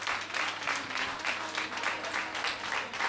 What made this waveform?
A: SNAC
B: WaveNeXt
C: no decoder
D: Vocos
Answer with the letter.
C